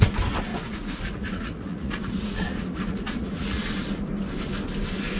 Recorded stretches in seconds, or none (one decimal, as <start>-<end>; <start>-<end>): 0.0-0.5; 3.6-5.2